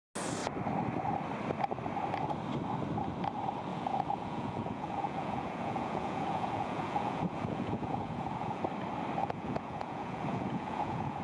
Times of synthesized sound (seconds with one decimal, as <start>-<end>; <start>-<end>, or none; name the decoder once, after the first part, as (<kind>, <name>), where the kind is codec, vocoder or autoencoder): 3.7-8.6 (vocoder, Vocos); 9.2-11.2